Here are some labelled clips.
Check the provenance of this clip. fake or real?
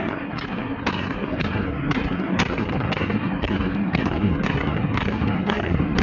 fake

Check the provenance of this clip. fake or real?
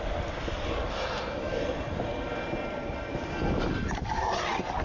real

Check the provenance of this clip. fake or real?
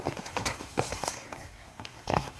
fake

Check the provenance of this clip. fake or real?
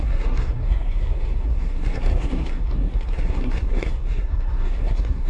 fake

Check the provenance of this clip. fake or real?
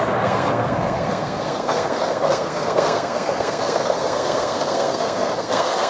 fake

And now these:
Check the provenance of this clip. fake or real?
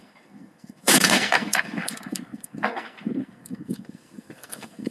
fake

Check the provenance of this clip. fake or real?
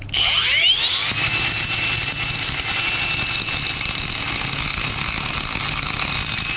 real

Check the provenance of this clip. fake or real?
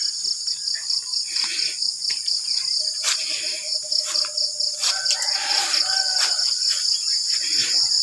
real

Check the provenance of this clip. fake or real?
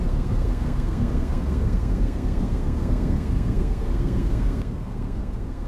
fake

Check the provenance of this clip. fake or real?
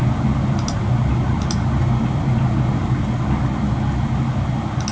real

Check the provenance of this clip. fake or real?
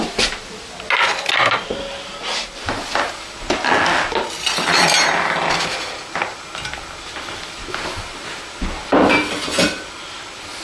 real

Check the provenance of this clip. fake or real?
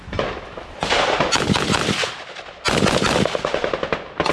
real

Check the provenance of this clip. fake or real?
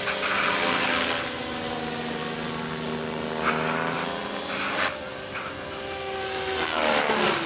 real